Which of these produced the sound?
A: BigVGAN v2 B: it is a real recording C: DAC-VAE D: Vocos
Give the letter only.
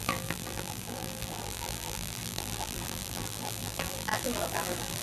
A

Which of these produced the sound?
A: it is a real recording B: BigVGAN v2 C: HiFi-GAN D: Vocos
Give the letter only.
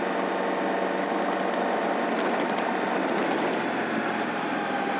A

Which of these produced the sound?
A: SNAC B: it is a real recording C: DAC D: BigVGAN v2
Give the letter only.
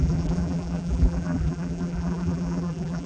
D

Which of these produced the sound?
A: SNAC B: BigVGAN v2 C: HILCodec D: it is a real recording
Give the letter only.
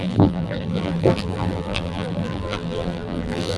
B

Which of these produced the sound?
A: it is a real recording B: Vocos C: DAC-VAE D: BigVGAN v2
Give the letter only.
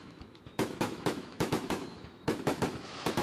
C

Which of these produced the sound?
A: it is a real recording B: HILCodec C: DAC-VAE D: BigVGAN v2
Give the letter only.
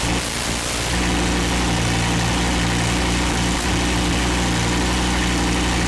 A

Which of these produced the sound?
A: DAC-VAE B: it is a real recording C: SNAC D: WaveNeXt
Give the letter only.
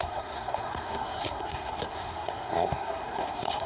C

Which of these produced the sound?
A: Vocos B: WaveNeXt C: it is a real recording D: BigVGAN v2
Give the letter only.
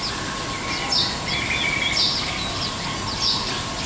C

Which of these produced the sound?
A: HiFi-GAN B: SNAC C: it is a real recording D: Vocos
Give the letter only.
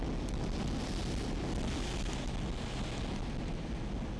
C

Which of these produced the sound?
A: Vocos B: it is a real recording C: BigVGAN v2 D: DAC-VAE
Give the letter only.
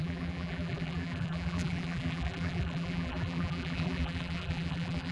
C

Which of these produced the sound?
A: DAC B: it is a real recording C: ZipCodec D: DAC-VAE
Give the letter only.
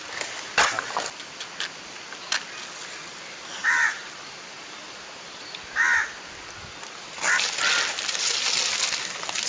B